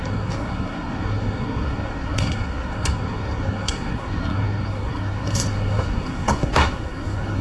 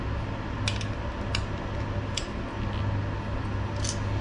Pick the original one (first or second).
second